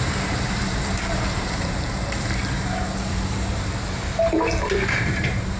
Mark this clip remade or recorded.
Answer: remade